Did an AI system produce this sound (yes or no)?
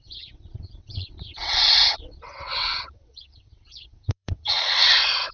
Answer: yes